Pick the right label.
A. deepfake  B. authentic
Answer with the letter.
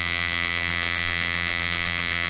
A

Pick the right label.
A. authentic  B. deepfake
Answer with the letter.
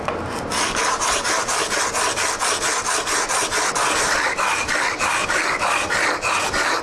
A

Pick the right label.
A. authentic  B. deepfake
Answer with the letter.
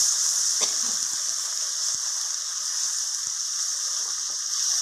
A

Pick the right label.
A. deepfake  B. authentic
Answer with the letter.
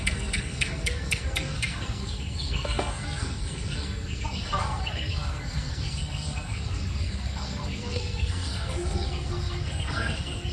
A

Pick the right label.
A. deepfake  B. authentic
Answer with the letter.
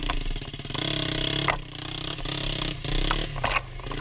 B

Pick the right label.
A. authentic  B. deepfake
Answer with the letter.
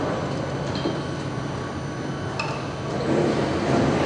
A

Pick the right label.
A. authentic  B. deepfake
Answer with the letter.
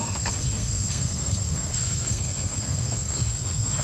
B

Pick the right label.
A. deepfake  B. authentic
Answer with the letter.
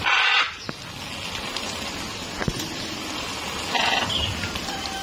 B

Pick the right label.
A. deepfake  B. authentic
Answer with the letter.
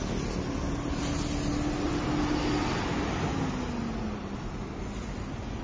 B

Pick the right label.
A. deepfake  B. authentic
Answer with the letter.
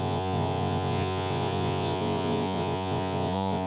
A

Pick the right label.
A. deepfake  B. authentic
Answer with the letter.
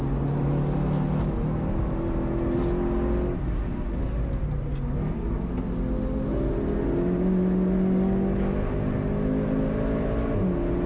B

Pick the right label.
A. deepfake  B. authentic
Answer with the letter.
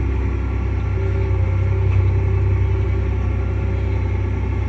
B